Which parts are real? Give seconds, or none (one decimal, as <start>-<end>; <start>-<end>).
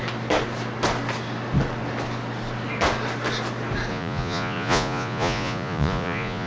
0.0-3.9